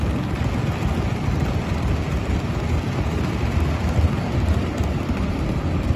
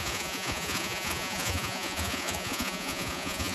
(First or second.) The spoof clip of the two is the second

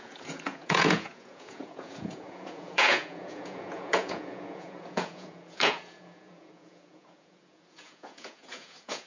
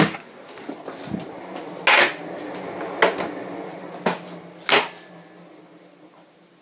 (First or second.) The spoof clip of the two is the first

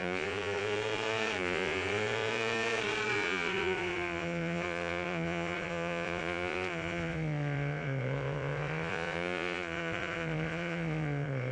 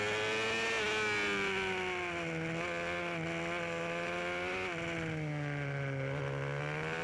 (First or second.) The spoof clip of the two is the first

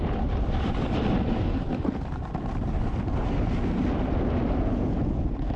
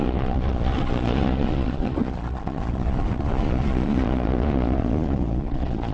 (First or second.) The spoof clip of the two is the second